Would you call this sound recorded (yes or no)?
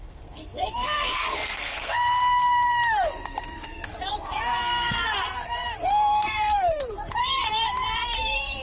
no